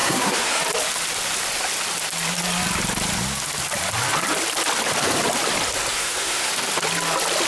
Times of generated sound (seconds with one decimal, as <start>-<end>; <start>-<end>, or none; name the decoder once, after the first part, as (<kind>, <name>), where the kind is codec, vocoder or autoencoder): 0.0-0.6 (codec, SNAC); 5.9-6.5